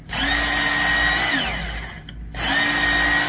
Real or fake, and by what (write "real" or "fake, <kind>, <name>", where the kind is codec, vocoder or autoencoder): real